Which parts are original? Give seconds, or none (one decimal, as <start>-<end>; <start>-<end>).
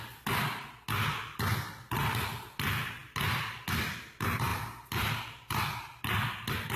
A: 0.0-4.5; 5.6-6.8